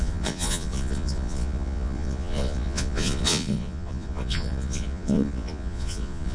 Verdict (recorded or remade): remade